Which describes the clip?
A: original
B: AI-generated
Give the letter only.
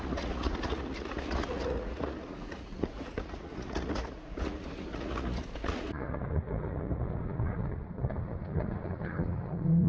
B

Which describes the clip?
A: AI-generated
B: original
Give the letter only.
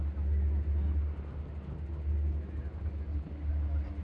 B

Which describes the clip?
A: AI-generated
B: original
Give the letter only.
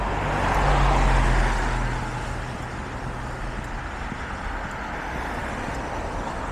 B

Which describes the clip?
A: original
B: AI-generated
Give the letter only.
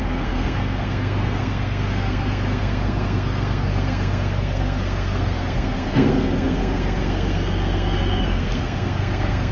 B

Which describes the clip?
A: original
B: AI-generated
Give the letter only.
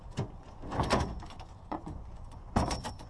B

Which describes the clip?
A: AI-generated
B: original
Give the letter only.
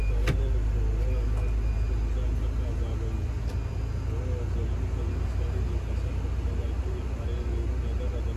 B